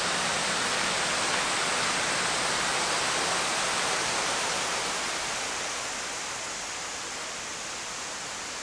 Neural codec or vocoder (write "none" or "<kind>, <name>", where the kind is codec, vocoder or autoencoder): none